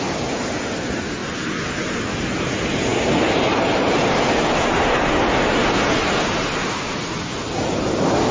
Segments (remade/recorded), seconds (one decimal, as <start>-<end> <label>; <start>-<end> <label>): 0.0-8.3 recorded